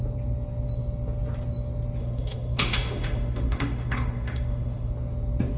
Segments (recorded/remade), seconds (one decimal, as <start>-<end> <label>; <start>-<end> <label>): 0.0-2.0 recorded; 2.0-4.9 remade; 4.9-5.6 recorded